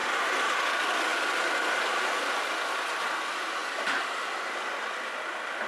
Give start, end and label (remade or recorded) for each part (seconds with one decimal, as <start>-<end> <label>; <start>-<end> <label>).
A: 0.0-0.6 remade; 0.6-1.1 recorded; 1.1-1.9 remade; 1.9-5.7 recorded